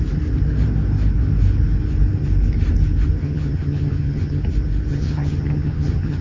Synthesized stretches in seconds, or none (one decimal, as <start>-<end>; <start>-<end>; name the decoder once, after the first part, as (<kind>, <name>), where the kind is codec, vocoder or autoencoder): 3.2-4.4 (vocoder, HiFi-GAN); 4.9-6.2